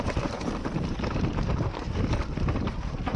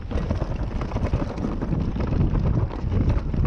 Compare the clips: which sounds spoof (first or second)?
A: first